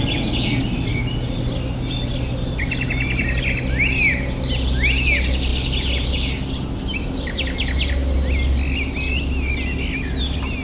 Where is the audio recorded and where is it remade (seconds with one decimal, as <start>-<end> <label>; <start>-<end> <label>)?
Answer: 0.0-10.6 recorded